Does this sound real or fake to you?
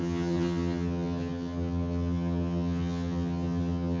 fake